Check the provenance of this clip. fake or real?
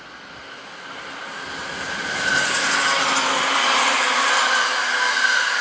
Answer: real